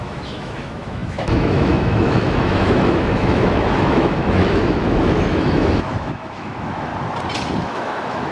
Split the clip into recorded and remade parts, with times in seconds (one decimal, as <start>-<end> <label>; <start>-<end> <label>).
0.0-6.9 remade; 6.9-7.6 recorded; 7.6-8.3 remade